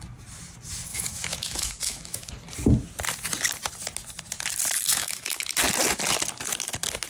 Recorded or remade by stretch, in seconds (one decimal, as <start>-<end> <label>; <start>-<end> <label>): 0.0-0.9 recorded; 0.9-2.3 remade; 2.3-4.9 recorded; 4.9-5.4 remade; 5.4-7.1 recorded